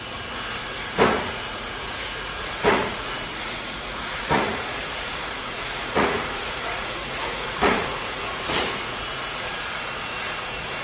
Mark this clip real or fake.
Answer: fake